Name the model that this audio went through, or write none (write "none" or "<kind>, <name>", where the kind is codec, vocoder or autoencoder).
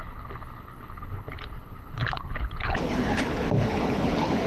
codec, HILCodec